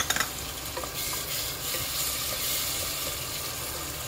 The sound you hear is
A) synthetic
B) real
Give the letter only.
B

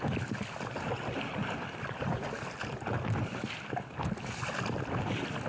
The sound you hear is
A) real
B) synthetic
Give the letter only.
A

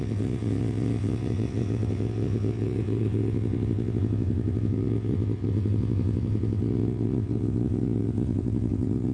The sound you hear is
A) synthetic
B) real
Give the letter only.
A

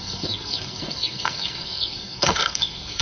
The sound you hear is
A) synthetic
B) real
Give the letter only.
A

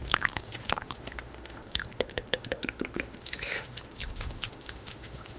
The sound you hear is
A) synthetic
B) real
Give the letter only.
A